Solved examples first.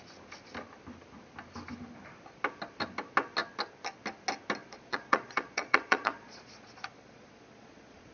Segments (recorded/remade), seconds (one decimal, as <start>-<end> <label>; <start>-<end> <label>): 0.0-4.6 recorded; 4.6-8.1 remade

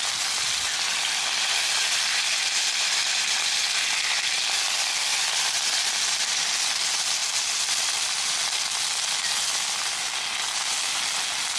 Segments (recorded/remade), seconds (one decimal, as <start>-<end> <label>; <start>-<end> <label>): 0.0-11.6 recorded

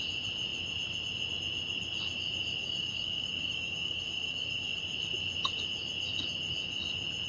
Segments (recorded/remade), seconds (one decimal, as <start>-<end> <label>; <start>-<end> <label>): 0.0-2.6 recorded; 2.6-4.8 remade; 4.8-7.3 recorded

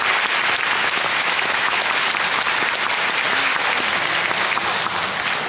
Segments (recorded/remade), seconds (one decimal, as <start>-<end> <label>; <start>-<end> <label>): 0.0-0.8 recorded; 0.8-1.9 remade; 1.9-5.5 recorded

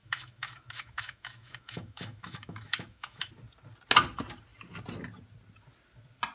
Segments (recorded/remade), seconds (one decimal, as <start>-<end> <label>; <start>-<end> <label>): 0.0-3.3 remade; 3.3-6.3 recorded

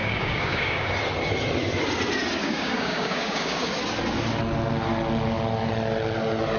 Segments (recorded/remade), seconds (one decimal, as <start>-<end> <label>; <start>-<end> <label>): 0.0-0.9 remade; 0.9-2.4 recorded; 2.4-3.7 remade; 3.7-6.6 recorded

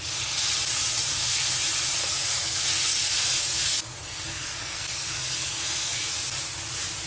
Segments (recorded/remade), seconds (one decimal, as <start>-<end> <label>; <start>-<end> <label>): 0.0-1.1 recorded; 1.1-1.6 remade; 1.6-2.0 recorded; 2.0-6.1 remade; 6.1-7.1 recorded

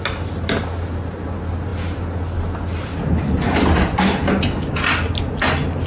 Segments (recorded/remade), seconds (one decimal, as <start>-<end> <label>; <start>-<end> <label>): 0.0-5.9 recorded